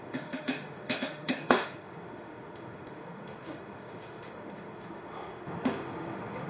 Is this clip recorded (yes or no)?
no